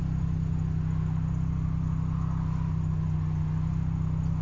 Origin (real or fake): real